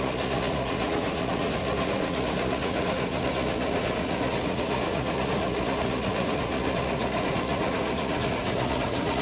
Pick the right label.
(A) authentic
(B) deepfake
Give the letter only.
B